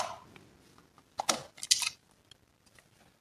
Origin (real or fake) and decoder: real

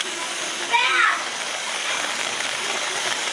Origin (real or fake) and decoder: fake, codec, DAC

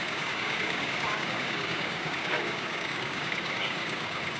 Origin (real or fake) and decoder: fake, codec, DAC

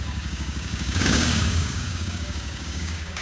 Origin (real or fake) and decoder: fake, codec, DAC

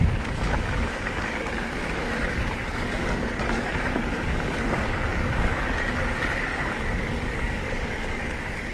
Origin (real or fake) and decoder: fake, codec, DAC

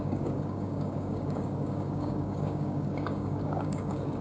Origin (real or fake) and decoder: fake, codec, DAC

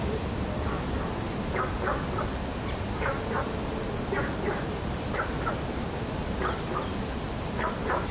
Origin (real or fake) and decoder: real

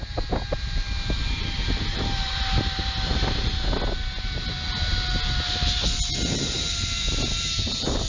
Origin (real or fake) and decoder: real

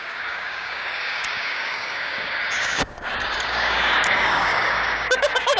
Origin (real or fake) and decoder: fake, codec, DAC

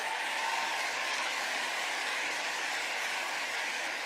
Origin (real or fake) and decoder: fake, codec, DAC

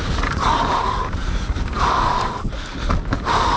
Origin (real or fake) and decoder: fake, codec, DAC